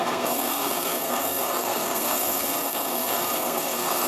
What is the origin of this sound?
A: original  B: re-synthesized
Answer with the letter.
B